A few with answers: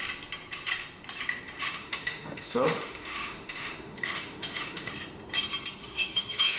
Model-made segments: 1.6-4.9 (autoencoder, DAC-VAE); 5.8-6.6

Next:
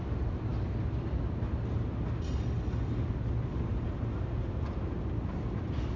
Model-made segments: none

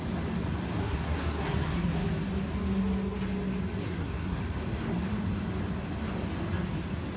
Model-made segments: 0.8-2.1 (codec, SNAC); 3.8-4.4